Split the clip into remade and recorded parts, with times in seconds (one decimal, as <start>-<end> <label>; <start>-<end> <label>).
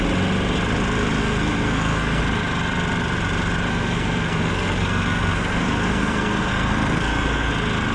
0.0-1.2 recorded; 1.2-2.2 remade; 2.2-3.7 recorded; 3.7-7.5 remade; 7.5-7.9 recorded